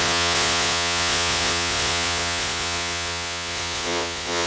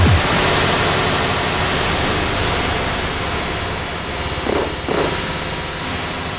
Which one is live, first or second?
second